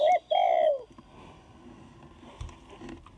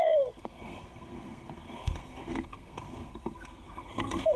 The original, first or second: first